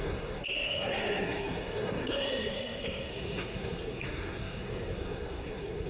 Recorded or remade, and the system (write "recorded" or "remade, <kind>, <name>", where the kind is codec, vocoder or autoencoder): remade, codec, SNAC